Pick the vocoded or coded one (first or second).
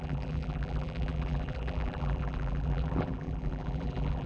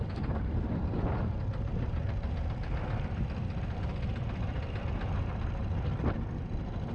first